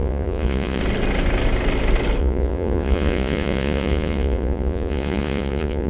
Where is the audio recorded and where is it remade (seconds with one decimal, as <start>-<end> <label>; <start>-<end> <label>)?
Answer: 0.0-0.8 remade; 0.8-2.2 recorded; 2.2-5.9 remade